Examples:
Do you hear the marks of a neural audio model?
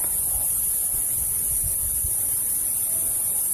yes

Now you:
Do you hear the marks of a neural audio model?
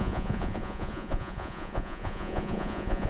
yes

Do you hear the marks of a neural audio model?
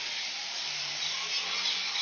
no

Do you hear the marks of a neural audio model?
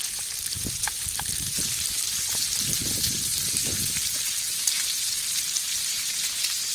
yes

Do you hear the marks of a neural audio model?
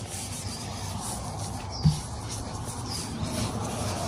no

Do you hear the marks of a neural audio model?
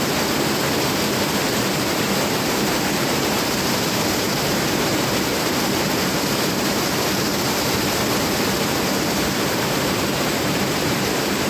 yes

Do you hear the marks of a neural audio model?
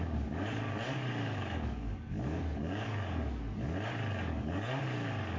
yes